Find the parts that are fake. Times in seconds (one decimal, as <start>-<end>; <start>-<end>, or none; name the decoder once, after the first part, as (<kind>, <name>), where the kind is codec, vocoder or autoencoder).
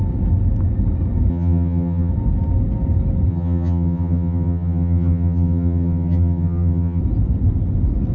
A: 1.3-2.1 (vocoder, HiFi-GAN); 3.3-7.0